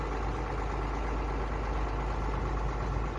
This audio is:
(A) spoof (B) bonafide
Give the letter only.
B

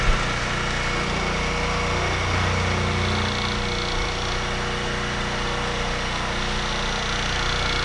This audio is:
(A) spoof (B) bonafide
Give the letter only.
B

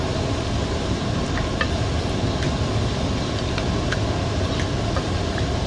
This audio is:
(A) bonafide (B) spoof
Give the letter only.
A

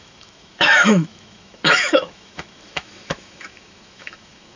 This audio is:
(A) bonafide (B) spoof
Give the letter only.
B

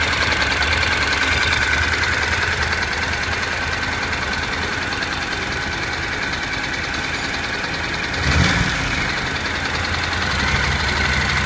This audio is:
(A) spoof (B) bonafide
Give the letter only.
B